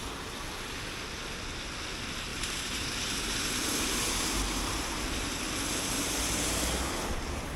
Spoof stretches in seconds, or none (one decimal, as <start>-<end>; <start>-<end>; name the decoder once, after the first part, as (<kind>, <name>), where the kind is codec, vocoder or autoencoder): 2.3-5.0 (vocoder, BigVGAN v2); 5.7-7.1